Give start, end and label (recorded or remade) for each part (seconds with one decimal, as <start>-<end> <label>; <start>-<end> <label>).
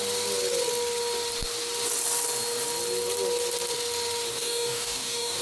0.0-4.3 recorded; 4.3-5.4 remade